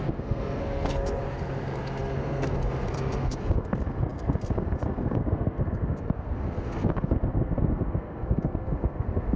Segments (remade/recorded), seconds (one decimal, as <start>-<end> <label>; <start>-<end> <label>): 0.0-9.4 remade